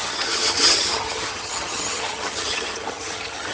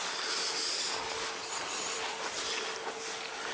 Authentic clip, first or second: second